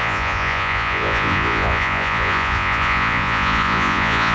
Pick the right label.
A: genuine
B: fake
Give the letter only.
B